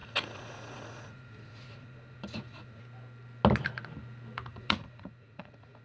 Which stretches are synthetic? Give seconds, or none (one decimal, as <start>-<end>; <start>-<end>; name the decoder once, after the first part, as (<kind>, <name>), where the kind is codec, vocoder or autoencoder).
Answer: 0.0-2.8 (vocoder, Vocos); 4.5-5.8